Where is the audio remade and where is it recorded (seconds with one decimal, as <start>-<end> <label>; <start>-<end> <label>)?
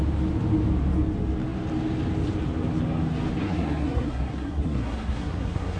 0.0-3.4 recorded; 3.4-5.8 remade